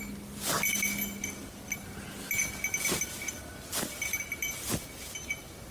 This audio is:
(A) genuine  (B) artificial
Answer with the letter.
A